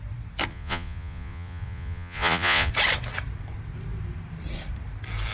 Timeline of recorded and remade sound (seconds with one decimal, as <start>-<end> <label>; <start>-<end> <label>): 0.0-0.5 recorded; 0.5-2.7 remade; 2.7-5.3 recorded